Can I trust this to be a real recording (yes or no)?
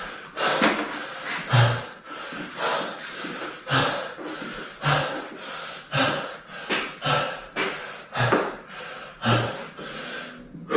yes